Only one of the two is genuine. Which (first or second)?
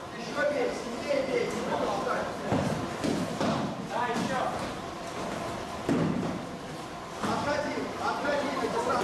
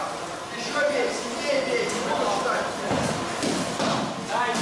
second